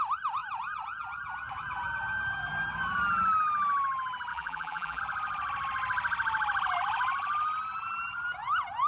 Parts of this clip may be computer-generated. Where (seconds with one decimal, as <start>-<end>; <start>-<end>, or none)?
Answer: 4.3-5.0